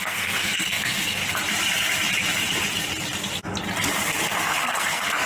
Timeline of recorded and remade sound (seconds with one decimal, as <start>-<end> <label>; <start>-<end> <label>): 0.0-1.2 remade; 1.2-4.2 recorded; 4.2-5.3 remade